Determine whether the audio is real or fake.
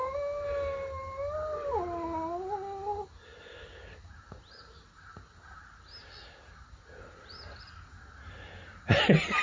real